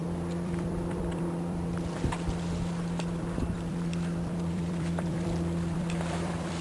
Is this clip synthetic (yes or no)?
yes